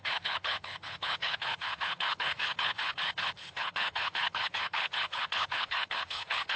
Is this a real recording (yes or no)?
no